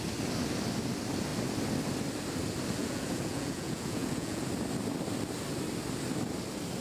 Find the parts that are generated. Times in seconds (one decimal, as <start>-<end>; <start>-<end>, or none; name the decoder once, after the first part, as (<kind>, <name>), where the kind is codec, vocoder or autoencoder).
2.8-4.4 (vocoder, Vocos)